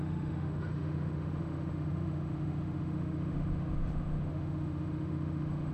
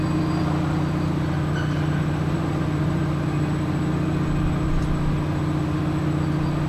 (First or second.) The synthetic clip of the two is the first